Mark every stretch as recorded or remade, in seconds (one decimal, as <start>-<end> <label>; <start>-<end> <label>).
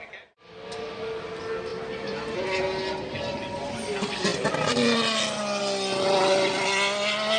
0.0-7.4 recorded